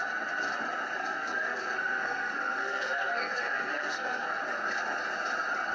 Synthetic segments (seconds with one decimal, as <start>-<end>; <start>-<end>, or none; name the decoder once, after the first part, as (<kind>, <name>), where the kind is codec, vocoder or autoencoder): 1.0-4.4 (codec, SNAC)

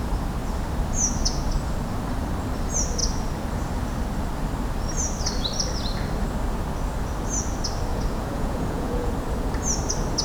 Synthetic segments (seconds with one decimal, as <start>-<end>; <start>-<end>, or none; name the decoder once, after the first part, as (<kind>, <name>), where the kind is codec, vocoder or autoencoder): 7.9-9.1 (vocoder, Vocos)

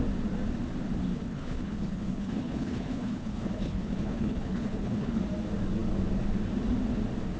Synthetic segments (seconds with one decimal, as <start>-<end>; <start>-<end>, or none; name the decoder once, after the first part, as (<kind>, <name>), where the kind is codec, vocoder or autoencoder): 1.1-5.2 (codec, HILCodec)

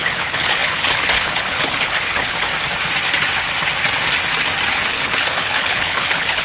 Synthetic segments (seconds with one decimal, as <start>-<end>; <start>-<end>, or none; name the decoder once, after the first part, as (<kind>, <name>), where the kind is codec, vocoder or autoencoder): 0.0-2.5 (codec, HILCodec); 4.9-6.4

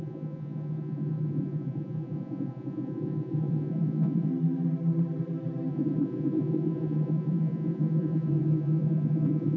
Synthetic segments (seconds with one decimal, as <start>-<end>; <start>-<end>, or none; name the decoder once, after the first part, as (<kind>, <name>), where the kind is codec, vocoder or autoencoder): 0.0-4.3 (vocoder, Vocos); 5.7-9.6

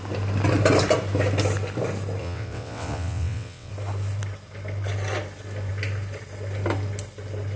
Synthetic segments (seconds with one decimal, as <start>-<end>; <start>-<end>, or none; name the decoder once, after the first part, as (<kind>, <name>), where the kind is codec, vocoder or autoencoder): 2.2-3.7 (vocoder, WaveNeXt)

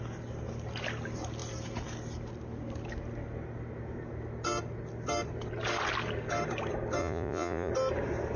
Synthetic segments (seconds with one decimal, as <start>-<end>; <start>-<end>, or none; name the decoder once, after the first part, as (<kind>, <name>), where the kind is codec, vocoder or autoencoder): 7.0-7.7 (vocoder, Vocos)

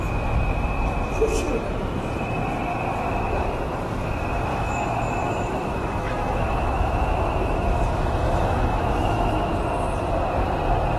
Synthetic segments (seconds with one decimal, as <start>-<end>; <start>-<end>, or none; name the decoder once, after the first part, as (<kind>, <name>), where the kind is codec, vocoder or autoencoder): 4.5-9.5 (autoencoder, DAC-VAE)